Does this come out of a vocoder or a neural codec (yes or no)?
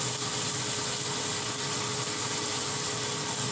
no